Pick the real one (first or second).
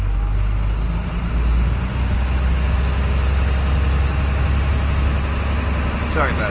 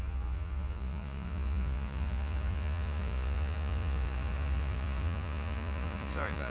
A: first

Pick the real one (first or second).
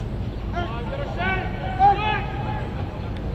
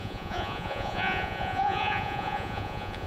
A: first